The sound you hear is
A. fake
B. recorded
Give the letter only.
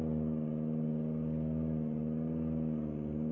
B